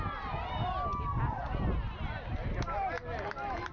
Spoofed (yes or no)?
no